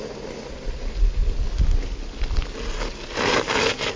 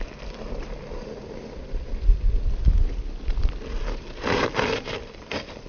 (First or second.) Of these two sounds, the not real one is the second